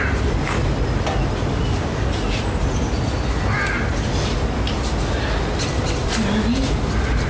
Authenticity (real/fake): real